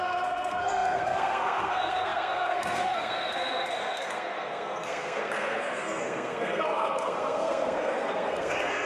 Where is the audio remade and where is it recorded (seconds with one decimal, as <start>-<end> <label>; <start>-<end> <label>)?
0.0-8.9 remade